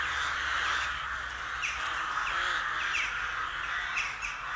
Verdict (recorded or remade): recorded